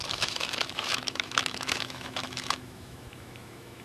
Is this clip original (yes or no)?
no